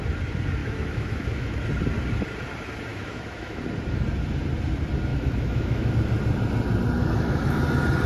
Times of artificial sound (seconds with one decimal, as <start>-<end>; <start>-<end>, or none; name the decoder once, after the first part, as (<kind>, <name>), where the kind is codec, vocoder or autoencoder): 0.6-1.6 (autoencoder, DAC-VAE); 2.9-3.6; 5.1-5.9; 7.0-7.6